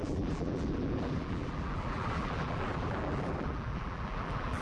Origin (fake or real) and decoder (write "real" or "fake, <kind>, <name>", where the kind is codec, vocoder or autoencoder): fake, vocoder, BigVGAN v2